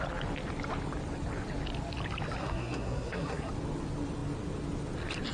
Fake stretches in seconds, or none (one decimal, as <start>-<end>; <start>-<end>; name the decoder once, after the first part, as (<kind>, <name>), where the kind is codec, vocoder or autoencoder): 2.4-3.5 (codec, SNAC)